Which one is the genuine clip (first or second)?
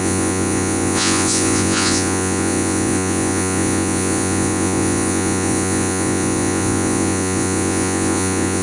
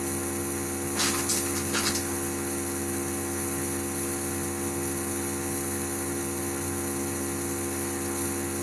second